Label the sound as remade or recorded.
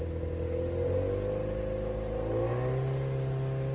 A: recorded